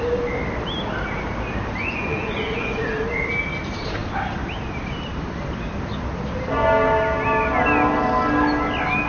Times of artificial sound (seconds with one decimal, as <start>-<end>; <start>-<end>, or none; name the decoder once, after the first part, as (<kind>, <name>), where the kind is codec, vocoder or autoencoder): 1.8-2.9 (vocoder, Vocos)